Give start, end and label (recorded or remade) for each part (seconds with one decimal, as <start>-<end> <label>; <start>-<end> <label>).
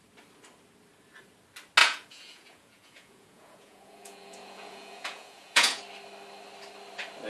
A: 0.0-1.8 recorded; 1.8-5.8 remade; 5.8-7.3 recorded